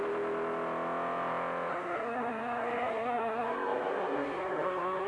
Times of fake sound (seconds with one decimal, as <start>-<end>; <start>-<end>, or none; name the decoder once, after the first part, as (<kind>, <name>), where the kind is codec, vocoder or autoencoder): 1.7-5.1 (codec, SNAC)